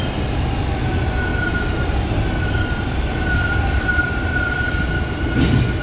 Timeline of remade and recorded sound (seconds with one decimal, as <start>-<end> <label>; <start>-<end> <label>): 0.0-1.3 recorded; 1.3-4.8 remade; 4.8-5.8 recorded